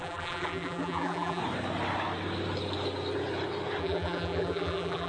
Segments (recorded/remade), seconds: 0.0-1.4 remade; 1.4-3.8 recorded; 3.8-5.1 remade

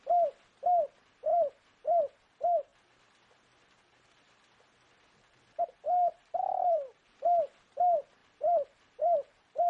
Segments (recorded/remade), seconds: 0.0-6.1 recorded; 6.1-7.5 remade; 7.5-8.2 recorded; 8.2-9.7 remade

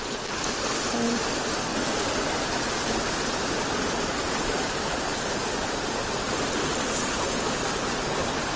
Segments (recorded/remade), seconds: 0.0-5.1 recorded; 5.1-6.4 remade; 6.4-8.6 recorded

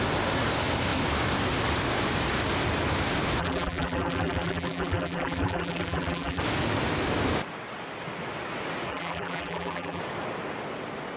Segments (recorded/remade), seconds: 0.0-3.4 recorded; 3.4-6.4 remade; 6.4-8.9 recorded; 8.9-10.0 remade; 10.0-11.2 recorded

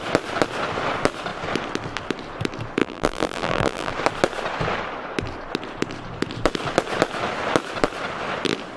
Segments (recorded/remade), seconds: 0.0-2.8 recorded; 2.8-3.9 remade; 3.9-8.8 recorded

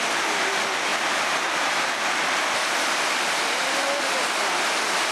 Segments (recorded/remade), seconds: 0.0-5.1 recorded

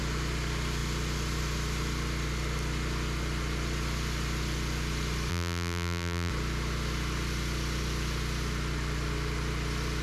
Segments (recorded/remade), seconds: 0.0-5.3 recorded; 5.3-6.3 remade; 6.3-10.0 recorded